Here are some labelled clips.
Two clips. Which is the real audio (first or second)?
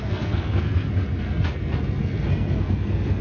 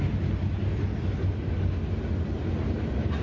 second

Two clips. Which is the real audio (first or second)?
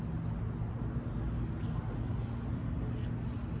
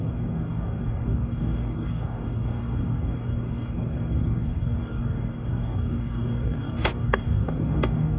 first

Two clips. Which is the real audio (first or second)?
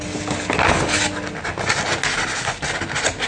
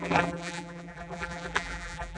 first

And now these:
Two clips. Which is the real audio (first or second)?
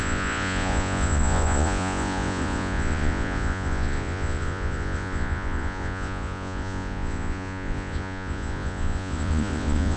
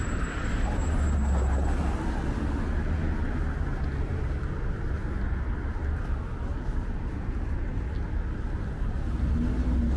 second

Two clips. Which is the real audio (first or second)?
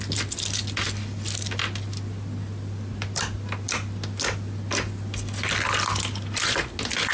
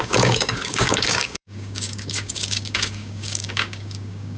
first